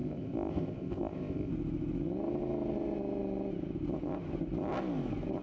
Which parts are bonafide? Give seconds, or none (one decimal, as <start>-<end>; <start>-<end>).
1.5-5.4